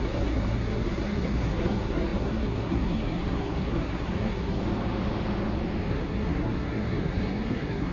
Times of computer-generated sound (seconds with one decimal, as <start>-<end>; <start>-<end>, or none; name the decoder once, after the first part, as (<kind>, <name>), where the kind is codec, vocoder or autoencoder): 0.0-4.6 (codec, SNAC); 5.9-7.9